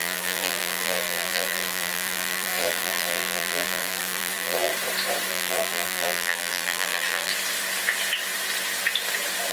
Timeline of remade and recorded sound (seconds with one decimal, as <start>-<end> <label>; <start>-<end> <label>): 0.0-4.7 remade; 4.7-5.3 recorded; 5.3-7.3 remade; 7.3-9.5 recorded